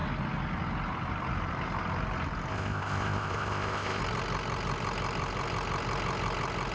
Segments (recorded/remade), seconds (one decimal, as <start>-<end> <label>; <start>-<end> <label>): 0.0-2.5 recorded; 2.5-4.0 remade; 4.0-6.7 recorded